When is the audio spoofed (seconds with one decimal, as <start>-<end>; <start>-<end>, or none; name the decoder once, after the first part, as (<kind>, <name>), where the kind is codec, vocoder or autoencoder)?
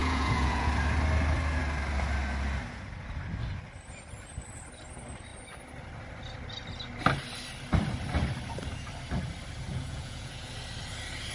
0.0-0.7 (vocoder, Vocos); 9.7-10.5